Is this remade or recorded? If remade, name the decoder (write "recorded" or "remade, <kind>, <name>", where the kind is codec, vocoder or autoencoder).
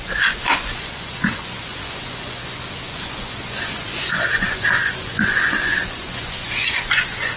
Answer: remade, vocoder, Vocos